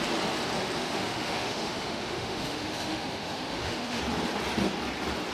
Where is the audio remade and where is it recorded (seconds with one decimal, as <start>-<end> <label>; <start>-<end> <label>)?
0.0-0.8 recorded; 0.8-4.0 remade; 4.0-5.3 recorded